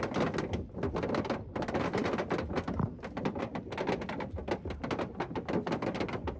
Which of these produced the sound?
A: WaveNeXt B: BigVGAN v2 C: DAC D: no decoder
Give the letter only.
D